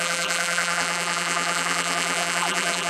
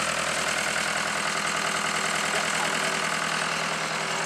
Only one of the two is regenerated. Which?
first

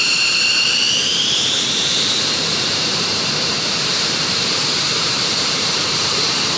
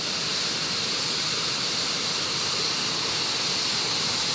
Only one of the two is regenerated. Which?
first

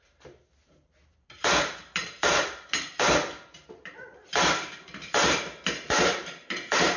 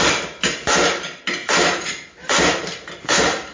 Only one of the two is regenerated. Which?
first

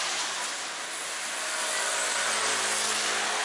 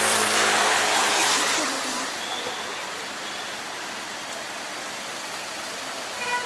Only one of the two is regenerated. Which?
second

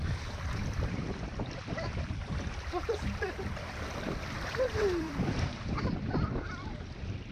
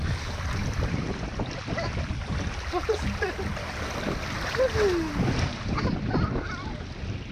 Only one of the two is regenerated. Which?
first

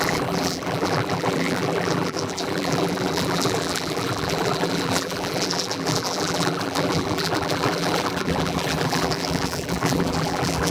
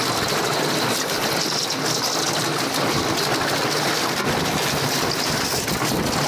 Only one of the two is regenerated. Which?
first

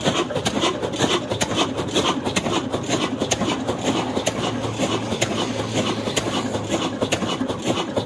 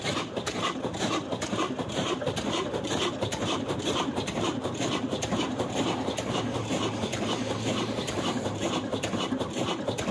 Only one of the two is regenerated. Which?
second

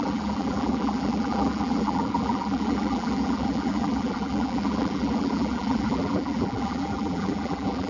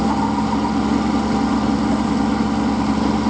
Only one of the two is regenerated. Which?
first